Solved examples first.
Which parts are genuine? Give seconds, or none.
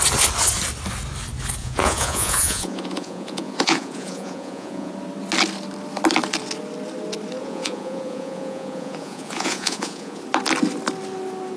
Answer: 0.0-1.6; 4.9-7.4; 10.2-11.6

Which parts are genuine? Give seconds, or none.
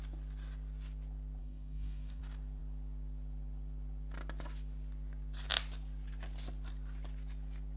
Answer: 0.0-1.4; 2.2-7.8